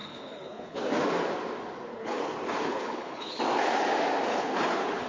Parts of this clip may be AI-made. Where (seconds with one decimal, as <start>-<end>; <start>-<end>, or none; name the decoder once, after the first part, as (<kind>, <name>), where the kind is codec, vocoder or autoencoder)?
0.0-0.8 (codec, HILCodec); 1.9-3.4; 4.3-5.1